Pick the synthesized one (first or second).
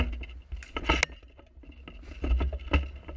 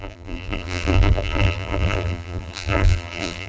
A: second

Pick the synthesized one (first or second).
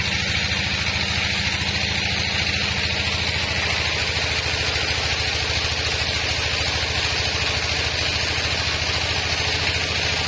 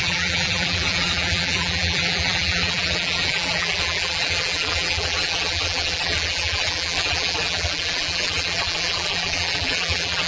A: second